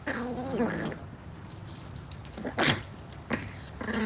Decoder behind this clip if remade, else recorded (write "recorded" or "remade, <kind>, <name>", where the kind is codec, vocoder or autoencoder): recorded